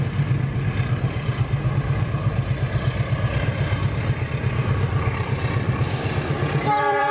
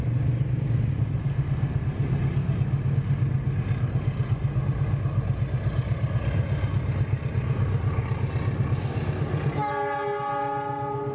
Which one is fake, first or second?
first